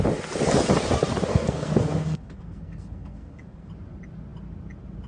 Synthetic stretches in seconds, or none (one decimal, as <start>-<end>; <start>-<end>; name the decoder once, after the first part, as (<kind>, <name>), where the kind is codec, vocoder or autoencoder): 1.3-3.7 (codec, SNAC)